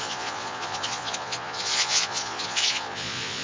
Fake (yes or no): yes